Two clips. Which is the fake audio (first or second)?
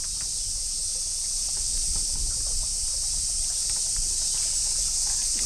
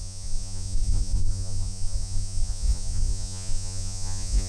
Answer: second